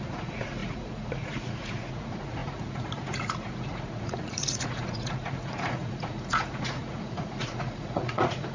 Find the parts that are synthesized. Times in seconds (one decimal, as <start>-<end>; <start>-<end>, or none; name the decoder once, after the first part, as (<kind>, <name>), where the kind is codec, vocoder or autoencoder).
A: 0.0-8.5 (vocoder, Vocos)